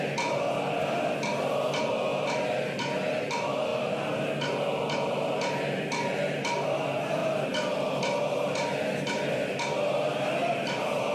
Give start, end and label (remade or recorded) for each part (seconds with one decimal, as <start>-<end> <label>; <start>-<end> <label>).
0.0-11.1 recorded